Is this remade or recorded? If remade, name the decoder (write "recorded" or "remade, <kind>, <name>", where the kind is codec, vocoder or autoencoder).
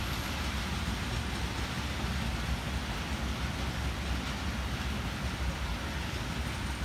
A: recorded